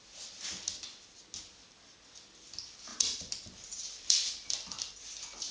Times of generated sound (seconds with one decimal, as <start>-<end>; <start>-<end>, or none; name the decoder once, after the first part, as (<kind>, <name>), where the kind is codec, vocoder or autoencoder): 2.9-4.9 (vocoder, BigVGAN v2)